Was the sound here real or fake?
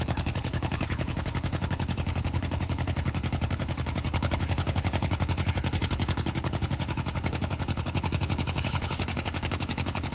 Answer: fake